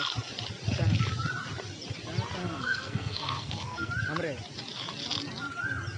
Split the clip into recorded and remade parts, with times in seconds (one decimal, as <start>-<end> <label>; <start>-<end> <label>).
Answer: 0.0-2.4 recorded; 2.4-3.9 remade; 3.9-6.0 recorded

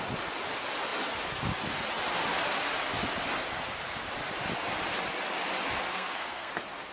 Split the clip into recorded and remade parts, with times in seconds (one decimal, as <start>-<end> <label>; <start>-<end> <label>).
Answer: 0.0-5.9 recorded; 5.9-6.5 remade; 6.5-6.9 recorded

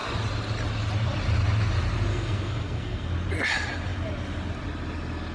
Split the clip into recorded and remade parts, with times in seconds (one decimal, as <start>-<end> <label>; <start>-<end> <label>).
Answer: 0.0-2.1 recorded; 2.1-3.1 remade; 3.1-5.3 recorded

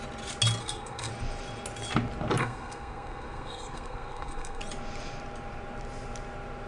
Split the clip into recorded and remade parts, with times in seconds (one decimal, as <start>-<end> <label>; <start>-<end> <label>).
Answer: 0.0-0.6 recorded; 0.6-1.1 remade; 1.1-2.4 recorded; 2.4-4.6 remade; 4.6-6.7 recorded